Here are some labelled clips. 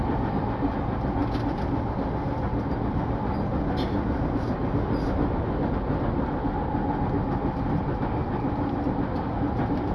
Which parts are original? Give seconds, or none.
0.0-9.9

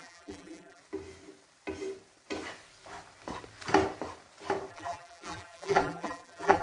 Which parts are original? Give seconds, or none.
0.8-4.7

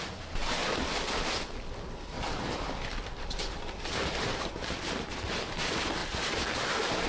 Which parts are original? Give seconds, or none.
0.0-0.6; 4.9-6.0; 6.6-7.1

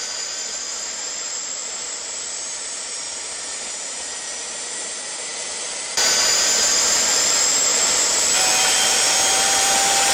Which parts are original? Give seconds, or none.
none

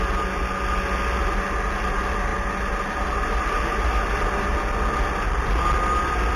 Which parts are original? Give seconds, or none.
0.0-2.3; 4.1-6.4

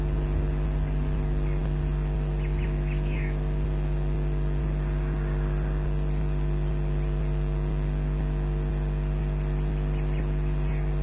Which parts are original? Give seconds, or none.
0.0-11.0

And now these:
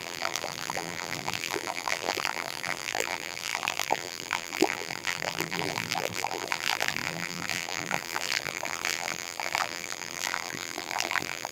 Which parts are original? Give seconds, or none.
none